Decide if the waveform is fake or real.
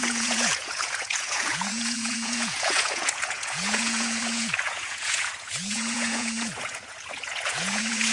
fake